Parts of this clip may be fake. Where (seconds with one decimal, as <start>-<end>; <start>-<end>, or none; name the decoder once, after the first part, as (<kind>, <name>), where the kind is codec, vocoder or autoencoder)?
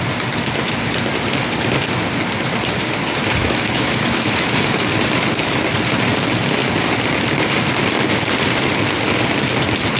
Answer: 3.4-4.4 (autoencoder, DAC-VAE)